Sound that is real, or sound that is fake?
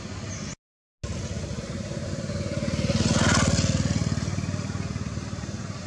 real